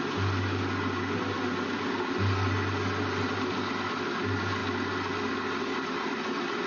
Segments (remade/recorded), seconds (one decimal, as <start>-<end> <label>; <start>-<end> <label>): 0.0-6.7 recorded